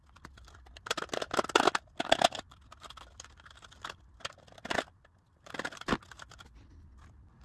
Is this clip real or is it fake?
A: real